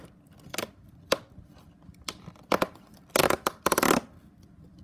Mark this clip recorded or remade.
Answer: recorded